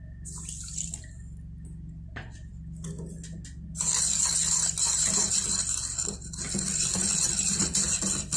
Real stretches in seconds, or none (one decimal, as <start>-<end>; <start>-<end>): 0.0-8.4